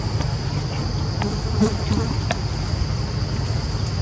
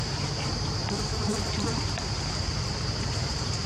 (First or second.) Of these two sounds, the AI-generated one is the second